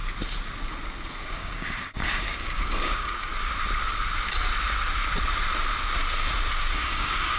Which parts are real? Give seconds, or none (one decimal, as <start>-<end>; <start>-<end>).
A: 0.0-1.2; 3.3-6.7